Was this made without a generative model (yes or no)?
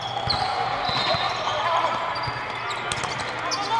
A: yes